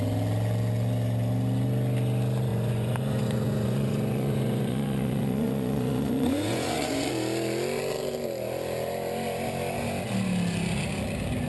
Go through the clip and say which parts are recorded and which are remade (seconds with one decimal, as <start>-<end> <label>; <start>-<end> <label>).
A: 0.0-2.5 recorded; 2.5-7.1 remade; 7.1-11.5 recorded